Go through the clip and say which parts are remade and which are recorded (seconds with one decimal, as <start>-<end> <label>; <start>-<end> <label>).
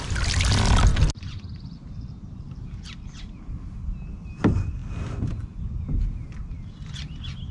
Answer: 0.0-7.5 recorded